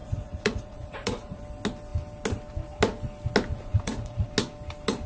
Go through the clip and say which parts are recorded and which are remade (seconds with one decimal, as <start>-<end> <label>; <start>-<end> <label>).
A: 0.0-1.4 remade; 1.4-3.5 recorded; 3.5-4.3 remade; 4.3-5.1 recorded